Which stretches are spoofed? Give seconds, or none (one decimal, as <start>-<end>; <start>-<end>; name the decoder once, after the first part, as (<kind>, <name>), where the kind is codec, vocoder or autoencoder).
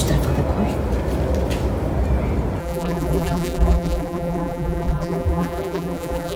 2.6-6.4 (vocoder, BigVGAN v2)